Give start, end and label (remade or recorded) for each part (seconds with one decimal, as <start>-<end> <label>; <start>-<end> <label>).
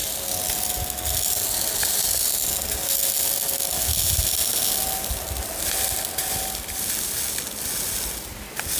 0.0-8.8 recorded